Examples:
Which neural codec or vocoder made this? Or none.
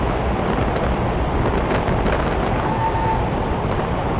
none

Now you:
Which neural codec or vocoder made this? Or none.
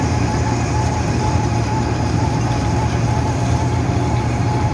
vocoder, BigVGAN v2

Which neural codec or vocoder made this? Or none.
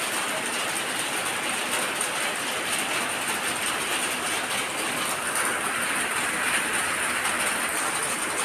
none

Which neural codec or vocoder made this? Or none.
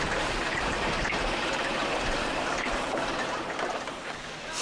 vocoder, BigVGAN v2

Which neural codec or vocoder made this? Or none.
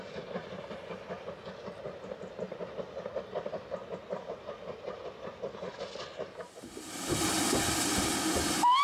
none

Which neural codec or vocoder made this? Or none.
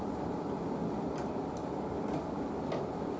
none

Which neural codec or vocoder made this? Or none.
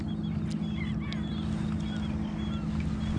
none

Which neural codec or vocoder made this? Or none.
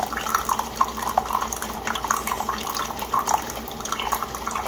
vocoder, BigVGAN v2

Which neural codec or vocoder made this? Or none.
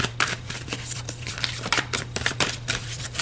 vocoder, BigVGAN v2